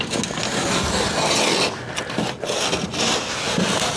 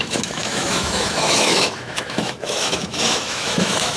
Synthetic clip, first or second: second